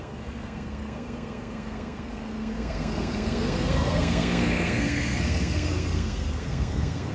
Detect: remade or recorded remade